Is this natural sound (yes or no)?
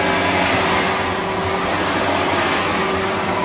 yes